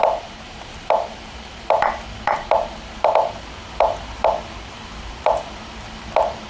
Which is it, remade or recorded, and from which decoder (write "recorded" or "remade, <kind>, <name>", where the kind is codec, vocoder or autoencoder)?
remade, vocoder, BigVGAN v2